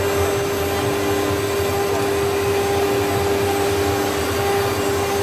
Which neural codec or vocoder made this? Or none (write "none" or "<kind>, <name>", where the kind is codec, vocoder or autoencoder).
none